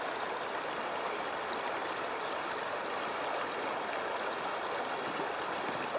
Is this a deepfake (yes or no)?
no